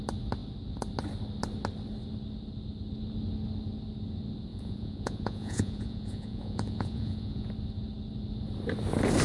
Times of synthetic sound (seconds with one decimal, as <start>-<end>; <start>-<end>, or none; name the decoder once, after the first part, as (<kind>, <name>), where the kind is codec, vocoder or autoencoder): 4.5-7.5 (vocoder, Vocos)